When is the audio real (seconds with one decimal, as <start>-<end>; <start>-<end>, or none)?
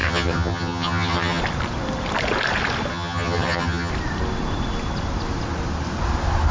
1.4-2.9; 3.9-6.5